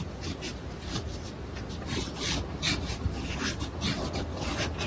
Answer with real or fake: real